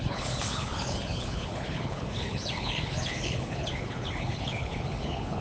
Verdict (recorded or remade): remade